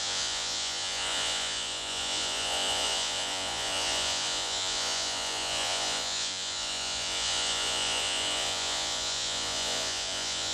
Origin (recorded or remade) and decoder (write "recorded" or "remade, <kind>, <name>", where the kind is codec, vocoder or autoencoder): remade, vocoder, Vocos